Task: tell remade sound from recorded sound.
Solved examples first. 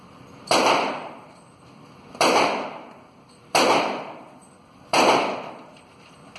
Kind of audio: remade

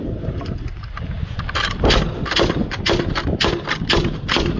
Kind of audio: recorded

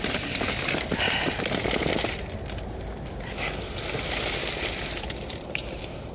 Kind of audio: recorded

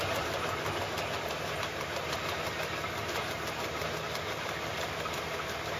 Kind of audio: recorded